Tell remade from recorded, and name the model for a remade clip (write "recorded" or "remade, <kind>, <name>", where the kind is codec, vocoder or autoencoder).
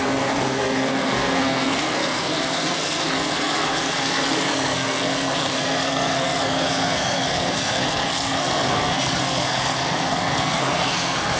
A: remade, codec, SNAC